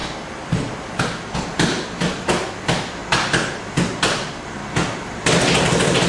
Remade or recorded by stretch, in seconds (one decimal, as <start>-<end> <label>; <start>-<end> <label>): 0.0-1.0 recorded; 1.0-3.0 remade; 3.0-3.7 recorded; 3.7-4.6 remade; 4.6-5.6 recorded; 5.6-6.1 remade